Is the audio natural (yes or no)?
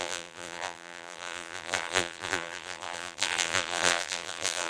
no